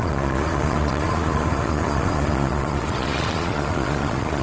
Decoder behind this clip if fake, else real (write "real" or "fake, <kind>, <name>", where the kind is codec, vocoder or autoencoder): fake, vocoder, Vocos